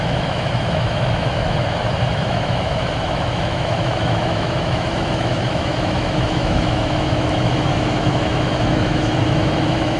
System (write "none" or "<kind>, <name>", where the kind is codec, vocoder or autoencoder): autoencoder, DAC-VAE